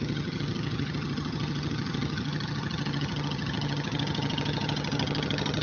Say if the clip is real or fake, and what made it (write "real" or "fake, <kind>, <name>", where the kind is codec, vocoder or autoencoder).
fake, vocoder, HiFi-GAN